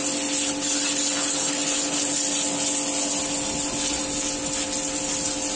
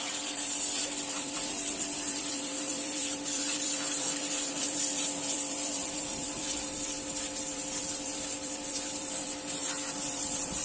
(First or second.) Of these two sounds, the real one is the first